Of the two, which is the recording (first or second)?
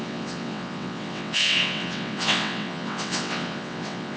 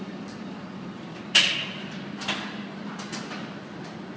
second